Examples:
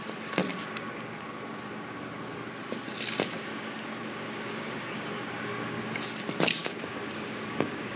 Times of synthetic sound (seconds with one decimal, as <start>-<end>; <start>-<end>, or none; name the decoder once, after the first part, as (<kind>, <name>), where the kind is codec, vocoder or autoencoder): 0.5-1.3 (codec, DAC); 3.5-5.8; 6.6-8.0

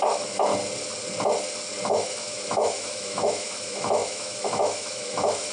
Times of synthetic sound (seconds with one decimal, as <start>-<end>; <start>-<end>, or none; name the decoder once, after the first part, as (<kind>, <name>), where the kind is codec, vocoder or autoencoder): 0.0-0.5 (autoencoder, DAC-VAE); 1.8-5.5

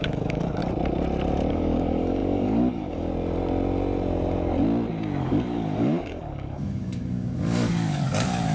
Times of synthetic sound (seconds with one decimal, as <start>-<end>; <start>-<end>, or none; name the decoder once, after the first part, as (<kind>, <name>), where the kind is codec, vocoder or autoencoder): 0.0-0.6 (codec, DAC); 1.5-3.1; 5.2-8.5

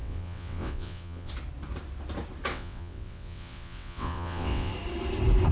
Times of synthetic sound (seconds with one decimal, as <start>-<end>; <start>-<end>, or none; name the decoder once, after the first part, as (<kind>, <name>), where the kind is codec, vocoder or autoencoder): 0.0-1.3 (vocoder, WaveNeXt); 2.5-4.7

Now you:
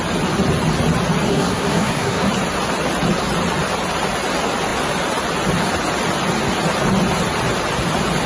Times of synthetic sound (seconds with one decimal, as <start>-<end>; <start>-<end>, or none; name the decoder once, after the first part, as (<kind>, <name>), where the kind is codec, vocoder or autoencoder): 1.3-2.3 (codec, SNAC)

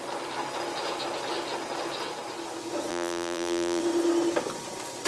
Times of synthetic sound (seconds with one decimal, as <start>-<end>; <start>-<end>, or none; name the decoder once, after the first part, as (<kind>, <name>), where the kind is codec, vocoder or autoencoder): 2.9-3.8 (vocoder, BigVGAN v2)